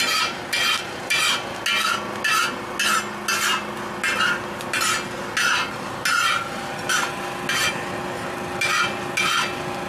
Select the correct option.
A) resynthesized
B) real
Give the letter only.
B